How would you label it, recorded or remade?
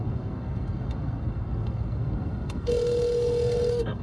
remade